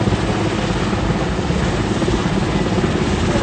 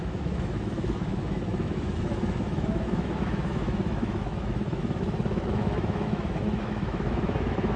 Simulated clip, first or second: second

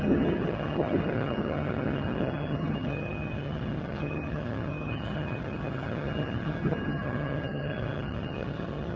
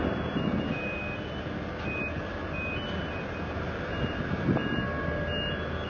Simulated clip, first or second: first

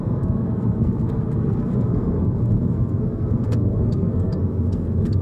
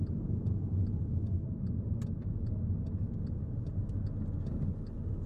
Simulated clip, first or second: first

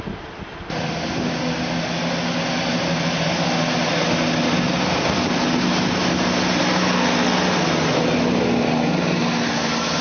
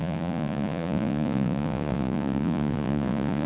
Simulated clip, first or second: second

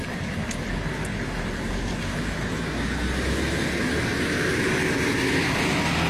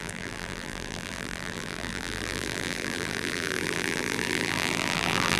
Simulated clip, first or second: second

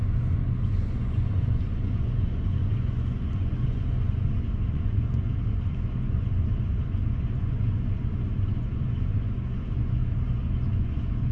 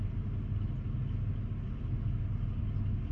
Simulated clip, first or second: first